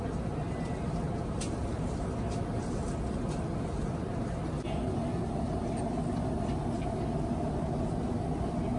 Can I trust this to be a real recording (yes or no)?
yes